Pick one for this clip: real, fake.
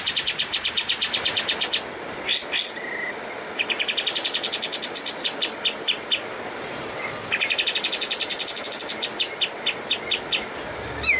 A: real